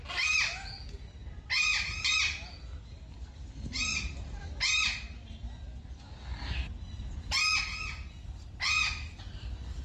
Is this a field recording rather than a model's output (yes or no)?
yes